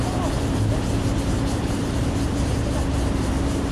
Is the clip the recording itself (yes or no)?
no